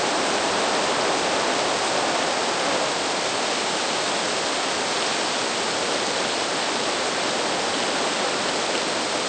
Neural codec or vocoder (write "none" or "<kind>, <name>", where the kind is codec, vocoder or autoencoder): none